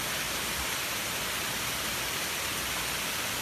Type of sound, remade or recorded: recorded